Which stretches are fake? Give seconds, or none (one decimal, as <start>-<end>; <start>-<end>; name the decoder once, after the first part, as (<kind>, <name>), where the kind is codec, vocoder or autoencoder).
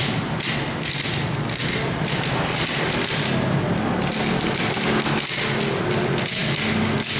none